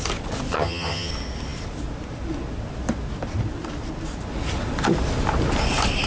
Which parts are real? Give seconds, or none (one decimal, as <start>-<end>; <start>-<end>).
0.0-0.5; 1.1-6.1